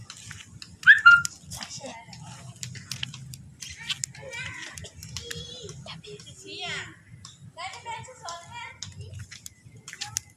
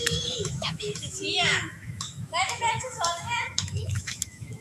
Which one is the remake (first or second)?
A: second